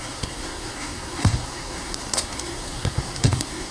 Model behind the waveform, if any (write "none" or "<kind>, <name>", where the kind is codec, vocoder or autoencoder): codec, SNAC